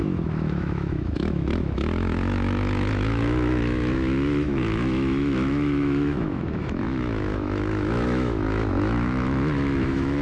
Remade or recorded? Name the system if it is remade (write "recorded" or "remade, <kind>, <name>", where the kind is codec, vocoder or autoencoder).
remade, autoencoder, DAC-VAE